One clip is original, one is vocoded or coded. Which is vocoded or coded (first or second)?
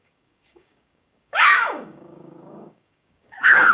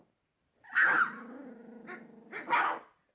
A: first